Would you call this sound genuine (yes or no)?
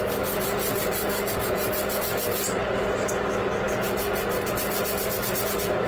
yes